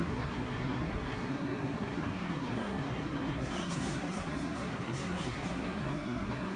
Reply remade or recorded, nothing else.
remade